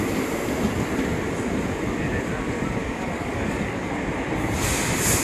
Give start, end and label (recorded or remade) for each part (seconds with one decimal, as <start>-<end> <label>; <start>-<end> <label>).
0.0-2.8 recorded; 2.8-3.9 remade; 3.9-5.2 recorded